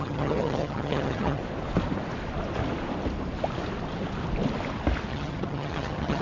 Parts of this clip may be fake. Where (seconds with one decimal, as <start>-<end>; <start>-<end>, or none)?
0.0-1.4; 5.1-6.2